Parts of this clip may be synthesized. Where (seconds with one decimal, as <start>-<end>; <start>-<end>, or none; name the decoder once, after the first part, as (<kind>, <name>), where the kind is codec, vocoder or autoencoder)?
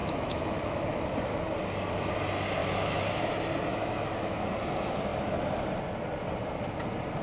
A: 0.0-1.4 (autoencoder, DAC-VAE); 2.6-3.3; 3.7-4.5